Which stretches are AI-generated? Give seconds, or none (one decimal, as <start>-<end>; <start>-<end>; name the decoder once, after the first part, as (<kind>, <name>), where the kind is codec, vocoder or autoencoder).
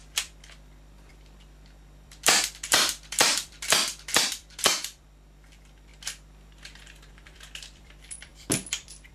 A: 0.0-5.9 (vocoder, BigVGAN v2); 7.1-9.1